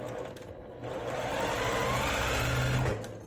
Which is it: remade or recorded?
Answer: recorded